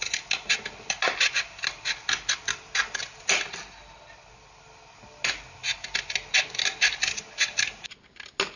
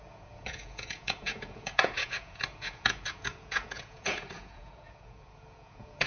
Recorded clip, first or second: first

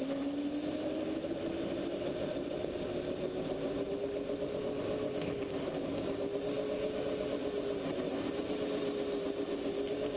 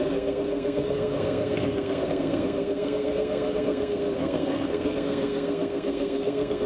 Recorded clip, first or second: first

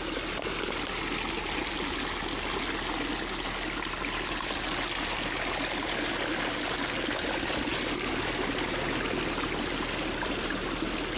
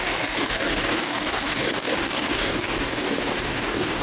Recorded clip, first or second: first